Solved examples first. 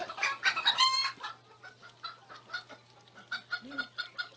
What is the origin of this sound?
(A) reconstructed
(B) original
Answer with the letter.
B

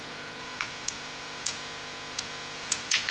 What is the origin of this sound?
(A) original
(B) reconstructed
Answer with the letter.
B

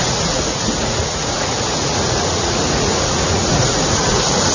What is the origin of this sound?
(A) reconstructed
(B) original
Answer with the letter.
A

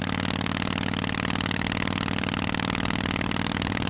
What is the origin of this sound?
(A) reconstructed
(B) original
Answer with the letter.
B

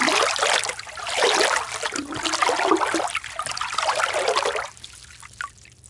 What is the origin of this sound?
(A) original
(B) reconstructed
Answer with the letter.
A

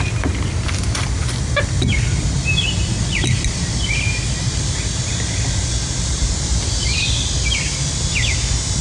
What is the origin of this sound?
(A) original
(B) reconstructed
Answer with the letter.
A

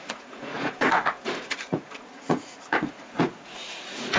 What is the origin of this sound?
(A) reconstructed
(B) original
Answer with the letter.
A